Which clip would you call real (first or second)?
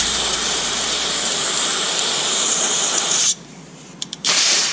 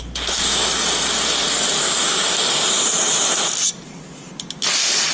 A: second